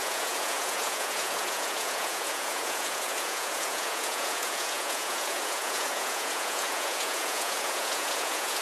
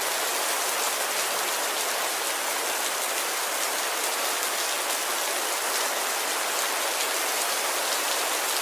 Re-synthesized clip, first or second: first